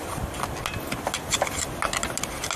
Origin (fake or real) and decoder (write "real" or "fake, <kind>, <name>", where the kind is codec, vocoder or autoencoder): real